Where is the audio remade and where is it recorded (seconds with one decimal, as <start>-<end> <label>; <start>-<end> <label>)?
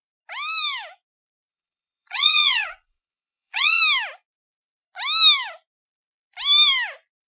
0.0-1.5 recorded; 1.5-3.8 remade; 3.8-7.4 recorded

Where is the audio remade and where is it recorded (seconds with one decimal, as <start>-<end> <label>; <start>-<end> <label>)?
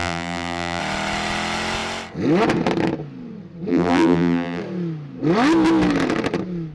0.0-0.8 remade; 0.8-3.7 recorded; 3.7-4.6 remade; 4.6-6.7 recorded